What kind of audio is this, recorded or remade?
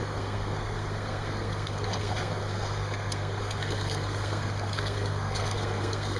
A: remade